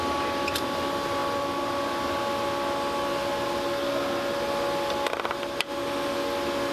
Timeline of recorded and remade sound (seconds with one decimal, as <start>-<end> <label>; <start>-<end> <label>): 0.0-6.7 recorded